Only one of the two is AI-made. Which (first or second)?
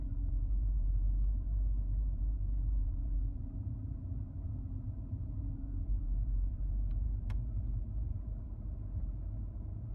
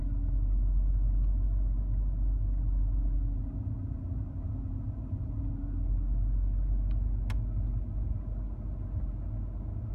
first